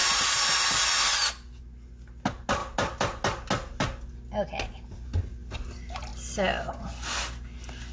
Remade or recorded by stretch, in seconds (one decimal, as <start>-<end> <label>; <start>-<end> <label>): 0.0-7.9 recorded